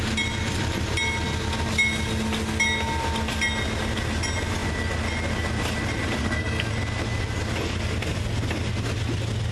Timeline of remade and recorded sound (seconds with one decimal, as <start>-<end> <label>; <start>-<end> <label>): 0.0-6.2 recorded; 6.2-6.7 remade; 6.7-9.5 recorded